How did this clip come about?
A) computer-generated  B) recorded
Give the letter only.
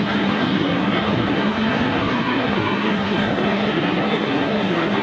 A